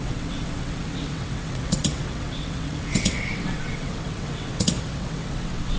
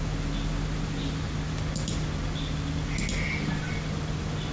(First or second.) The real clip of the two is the second